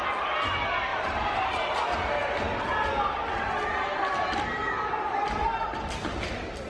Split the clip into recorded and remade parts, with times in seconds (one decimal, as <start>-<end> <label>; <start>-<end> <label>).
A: 0.0-0.9 recorded; 0.9-1.6 remade; 1.6-6.7 recorded